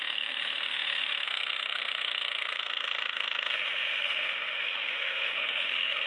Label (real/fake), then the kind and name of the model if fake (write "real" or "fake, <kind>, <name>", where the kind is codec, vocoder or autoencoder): fake, autoencoder, DAC-VAE